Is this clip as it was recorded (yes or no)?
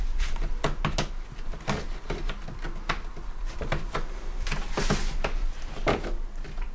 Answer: yes